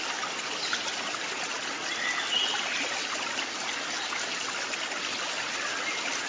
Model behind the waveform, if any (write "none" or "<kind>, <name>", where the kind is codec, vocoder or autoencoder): none